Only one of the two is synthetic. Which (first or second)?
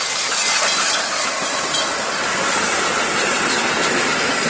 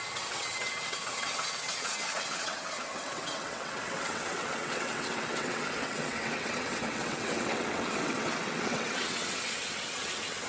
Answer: second